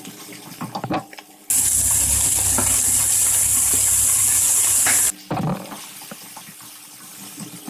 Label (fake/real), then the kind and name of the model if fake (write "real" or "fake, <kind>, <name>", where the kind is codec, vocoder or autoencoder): real